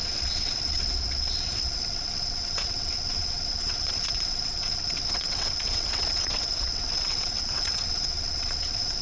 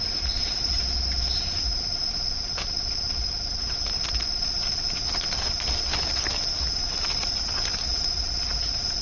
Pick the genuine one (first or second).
second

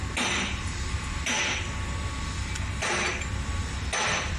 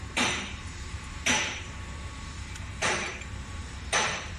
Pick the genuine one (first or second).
first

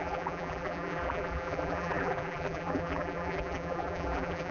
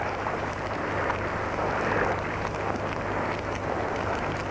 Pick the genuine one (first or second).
second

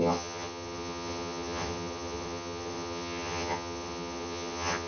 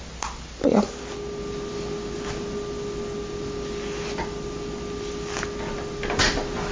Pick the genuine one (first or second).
second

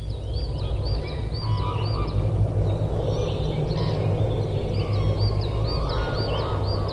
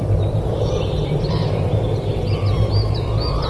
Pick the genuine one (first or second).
first